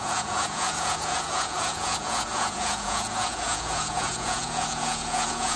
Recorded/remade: remade